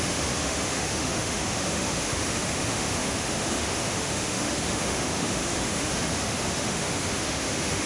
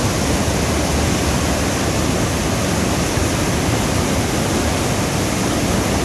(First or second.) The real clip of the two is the second